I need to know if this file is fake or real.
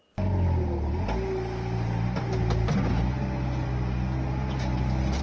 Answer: real